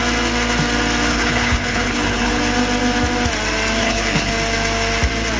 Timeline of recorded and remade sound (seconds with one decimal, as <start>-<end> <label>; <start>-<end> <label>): 0.0-1.1 recorded; 1.1-2.4 remade; 2.4-3.8 recorded; 3.8-4.3 remade; 4.3-5.4 recorded